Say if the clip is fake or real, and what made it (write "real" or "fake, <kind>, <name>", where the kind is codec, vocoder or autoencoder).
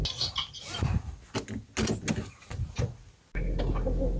real